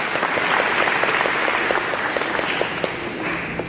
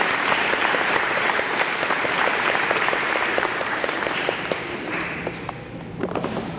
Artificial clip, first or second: second